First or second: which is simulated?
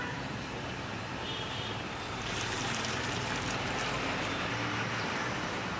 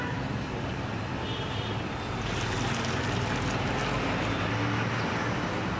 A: first